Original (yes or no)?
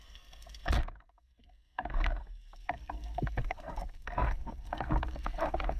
no